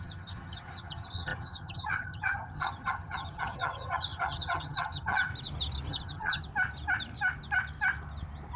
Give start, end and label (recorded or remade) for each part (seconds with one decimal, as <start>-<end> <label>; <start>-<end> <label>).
0.0-5.3 remade; 5.3-5.9 recorded; 5.9-6.4 remade; 6.4-8.6 recorded